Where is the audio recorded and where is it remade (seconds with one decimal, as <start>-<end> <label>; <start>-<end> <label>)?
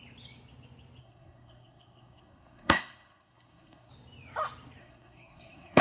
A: 0.0-1.0 recorded; 1.0-3.9 remade; 3.9-4.8 recorded; 4.8-5.8 remade